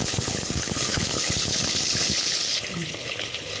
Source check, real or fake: fake